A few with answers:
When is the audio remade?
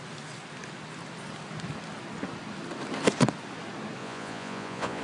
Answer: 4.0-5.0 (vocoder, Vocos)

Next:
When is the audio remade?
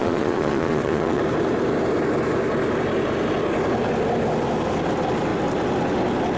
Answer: 0.0-1.2 (vocoder, Vocos)